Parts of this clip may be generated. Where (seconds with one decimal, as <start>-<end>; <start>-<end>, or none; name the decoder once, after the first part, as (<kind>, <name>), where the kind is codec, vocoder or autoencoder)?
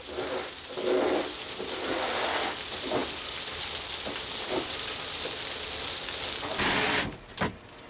none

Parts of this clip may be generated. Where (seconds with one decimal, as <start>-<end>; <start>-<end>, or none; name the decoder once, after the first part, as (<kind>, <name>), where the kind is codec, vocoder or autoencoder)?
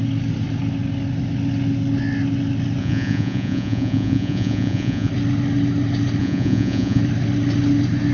2.8-5.1 (vocoder, Vocos); 6.2-7.0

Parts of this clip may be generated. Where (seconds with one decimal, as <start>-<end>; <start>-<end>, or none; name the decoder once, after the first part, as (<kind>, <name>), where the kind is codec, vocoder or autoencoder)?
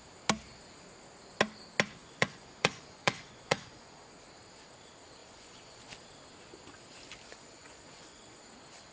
2.0-4.1 (vocoder, Vocos); 5.2-5.8; 7.3-8.4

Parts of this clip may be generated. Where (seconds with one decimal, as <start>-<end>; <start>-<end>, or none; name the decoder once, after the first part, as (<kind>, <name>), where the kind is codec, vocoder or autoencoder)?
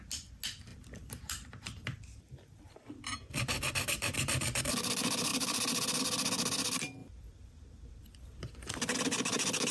0.7-4.6 (vocoder, BigVGAN v2); 5.3-6.0; 7.0-9.0